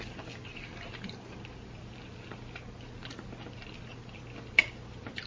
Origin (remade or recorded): recorded